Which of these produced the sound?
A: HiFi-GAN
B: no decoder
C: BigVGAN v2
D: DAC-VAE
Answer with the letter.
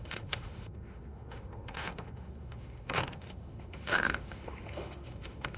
D